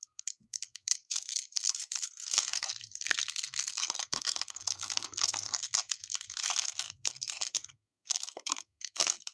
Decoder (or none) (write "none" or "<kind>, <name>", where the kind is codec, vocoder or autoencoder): codec, SNAC